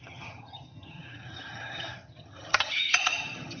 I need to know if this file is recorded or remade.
remade